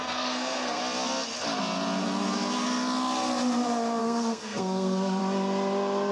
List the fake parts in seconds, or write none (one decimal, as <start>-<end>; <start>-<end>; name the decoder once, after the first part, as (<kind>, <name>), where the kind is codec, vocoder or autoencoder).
0.0-0.8 (codec, SNAC); 4.0-5.2